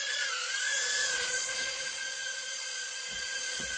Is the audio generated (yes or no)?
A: yes